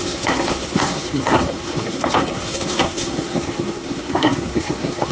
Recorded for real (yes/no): no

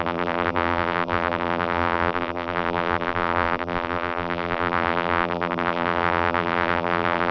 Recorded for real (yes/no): no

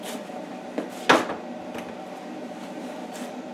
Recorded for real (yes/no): yes